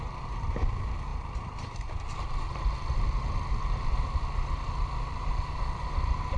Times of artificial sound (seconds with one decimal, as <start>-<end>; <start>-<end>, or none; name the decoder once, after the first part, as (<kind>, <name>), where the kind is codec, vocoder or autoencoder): none